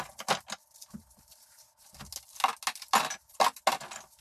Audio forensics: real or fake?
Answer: real